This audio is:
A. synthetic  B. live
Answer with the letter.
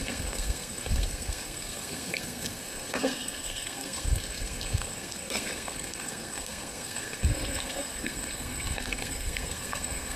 A